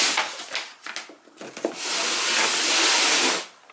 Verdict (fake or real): real